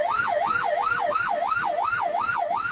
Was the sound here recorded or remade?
recorded